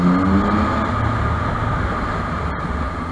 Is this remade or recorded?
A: recorded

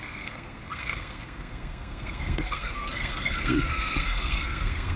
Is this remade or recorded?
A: remade